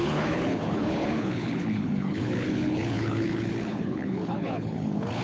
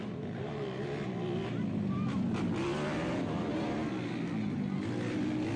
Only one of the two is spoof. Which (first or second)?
first